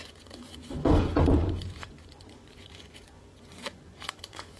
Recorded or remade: remade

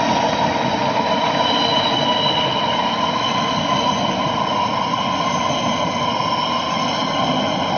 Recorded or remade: recorded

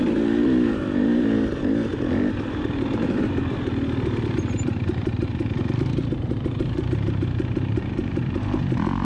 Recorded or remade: remade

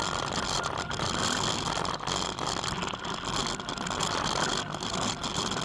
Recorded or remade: recorded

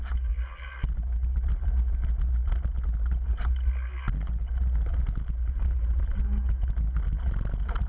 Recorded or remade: recorded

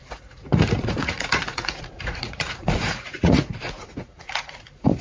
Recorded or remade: remade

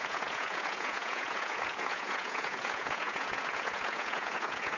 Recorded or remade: remade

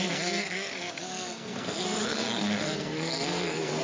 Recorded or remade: remade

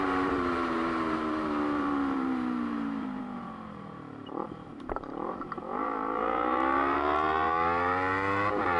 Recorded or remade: remade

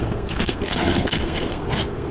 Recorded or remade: remade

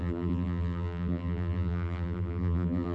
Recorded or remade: remade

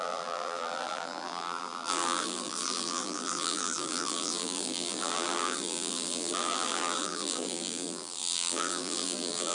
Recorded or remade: remade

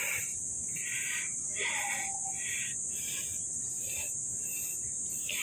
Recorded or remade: recorded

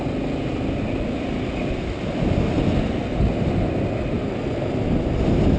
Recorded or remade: recorded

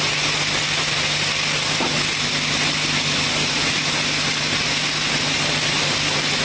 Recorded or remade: recorded